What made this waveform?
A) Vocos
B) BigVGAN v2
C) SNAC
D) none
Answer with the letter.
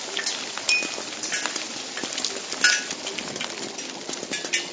D